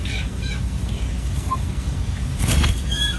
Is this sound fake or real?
fake